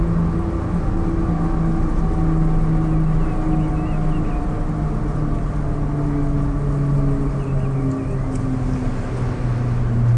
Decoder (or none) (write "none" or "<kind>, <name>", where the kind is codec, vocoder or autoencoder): none